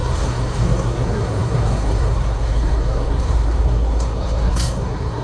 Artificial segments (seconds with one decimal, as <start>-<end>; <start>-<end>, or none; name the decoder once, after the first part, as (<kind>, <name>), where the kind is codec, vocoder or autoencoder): 0.0-5.2 (codec, SNAC)